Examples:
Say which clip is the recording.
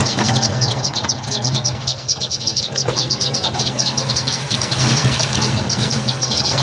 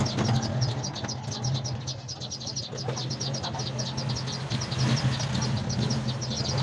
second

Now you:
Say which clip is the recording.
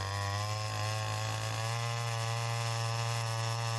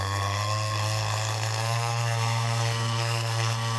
first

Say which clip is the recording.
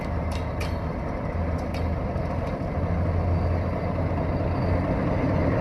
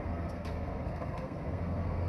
first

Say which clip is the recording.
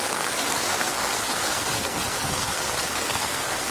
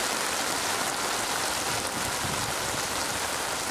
second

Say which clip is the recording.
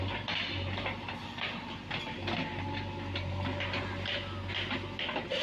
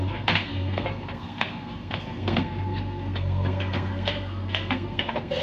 first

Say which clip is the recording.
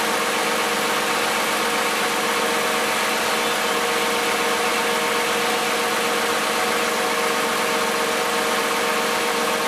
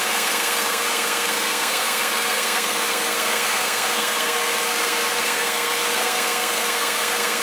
first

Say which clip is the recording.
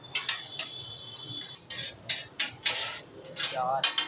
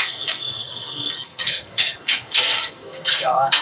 first